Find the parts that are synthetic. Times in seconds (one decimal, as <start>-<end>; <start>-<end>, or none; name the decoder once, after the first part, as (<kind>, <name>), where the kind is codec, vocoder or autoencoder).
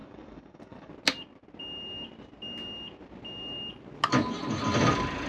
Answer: 0.0-0.9 (codec, DAC)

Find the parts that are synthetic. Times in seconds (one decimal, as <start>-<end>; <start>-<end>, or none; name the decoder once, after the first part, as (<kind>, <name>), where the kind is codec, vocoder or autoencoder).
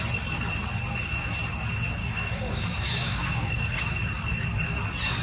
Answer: 2.0-3.8 (codec, DAC)